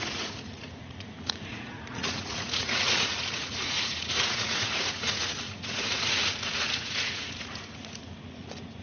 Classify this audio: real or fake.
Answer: fake